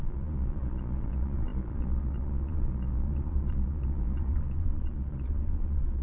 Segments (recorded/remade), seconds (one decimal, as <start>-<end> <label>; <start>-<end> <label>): 0.0-6.0 remade